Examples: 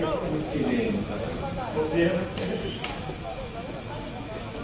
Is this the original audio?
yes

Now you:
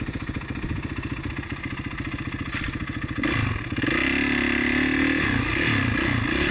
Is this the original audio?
yes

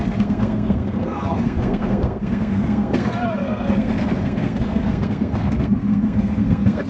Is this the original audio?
no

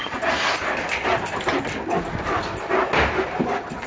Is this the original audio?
yes